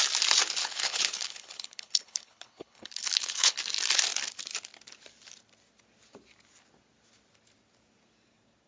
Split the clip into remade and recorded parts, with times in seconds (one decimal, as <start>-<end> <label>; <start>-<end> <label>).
0.0-0.6 recorded; 0.6-3.6 remade; 3.6-8.7 recorded